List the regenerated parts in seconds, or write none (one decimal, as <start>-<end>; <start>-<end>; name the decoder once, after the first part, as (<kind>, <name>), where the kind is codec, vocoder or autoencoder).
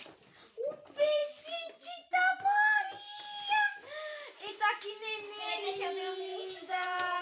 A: 6.3-7.2 (vocoder, Vocos)